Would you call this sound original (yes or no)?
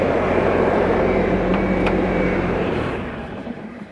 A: no